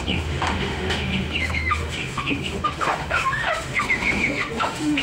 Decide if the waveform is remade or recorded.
remade